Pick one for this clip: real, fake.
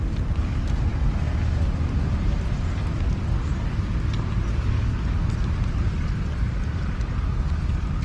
real